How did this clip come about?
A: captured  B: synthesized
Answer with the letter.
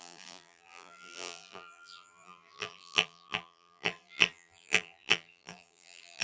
B